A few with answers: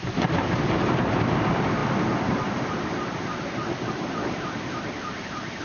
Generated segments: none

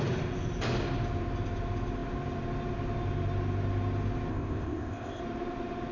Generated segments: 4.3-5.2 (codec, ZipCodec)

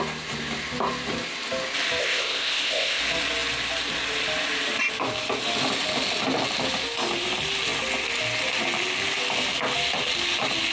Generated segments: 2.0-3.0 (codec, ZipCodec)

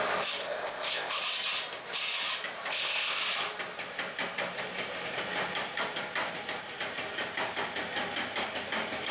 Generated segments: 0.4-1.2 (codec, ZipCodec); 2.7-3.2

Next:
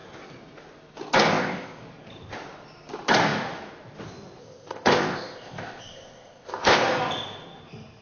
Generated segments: 1.3-1.8 (codec, ZipCodec); 4.4-6.8